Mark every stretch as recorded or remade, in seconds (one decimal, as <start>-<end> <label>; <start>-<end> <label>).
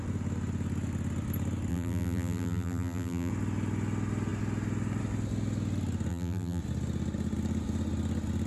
0.0-1.7 recorded; 1.7-3.3 remade; 3.3-6.1 recorded; 6.1-6.6 remade; 6.6-8.5 recorded